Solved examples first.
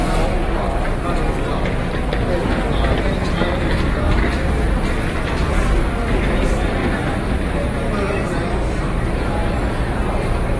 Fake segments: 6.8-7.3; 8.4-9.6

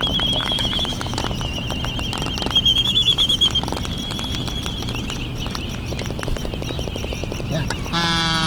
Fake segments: 0.4-1.2; 2.7-3.5

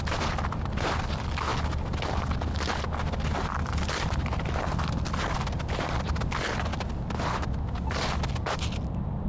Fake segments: none

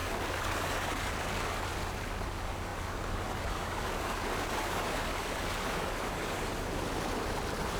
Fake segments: 0.0-1.7; 2.3-6.5

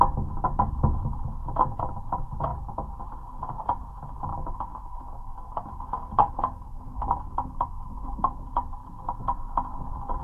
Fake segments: 4.3-8.2

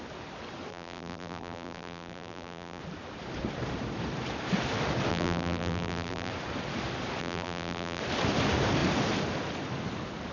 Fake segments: 0.7-2.8; 5.1-6.3; 7.2-8.0

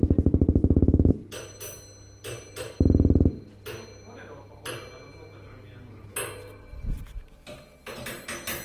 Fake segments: 0.6-1.1